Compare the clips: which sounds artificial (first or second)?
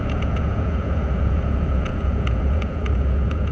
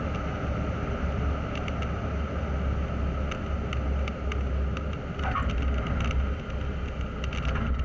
first